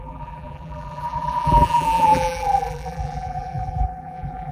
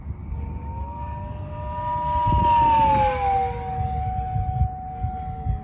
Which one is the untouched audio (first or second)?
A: second